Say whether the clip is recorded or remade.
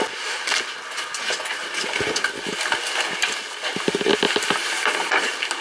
recorded